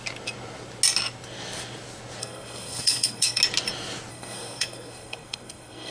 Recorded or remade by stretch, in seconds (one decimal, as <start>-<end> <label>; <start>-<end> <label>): 0.0-2.2 recorded; 2.2-3.4 remade; 3.4-4.1 recorded; 4.1-5.9 remade